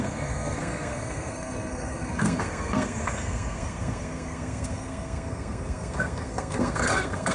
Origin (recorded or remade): remade